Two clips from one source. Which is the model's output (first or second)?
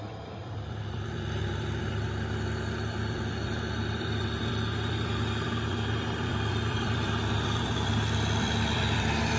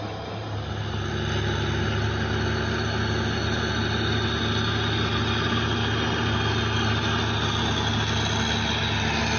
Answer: first